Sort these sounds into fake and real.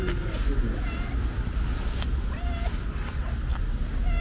real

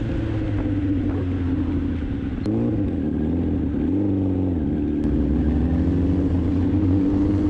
real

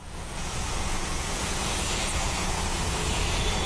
fake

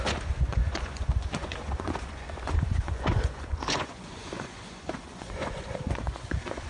fake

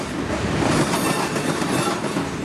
real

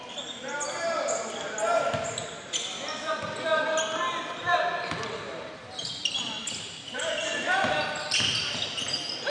real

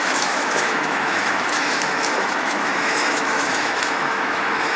fake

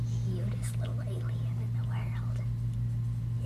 real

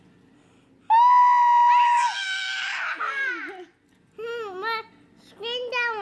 real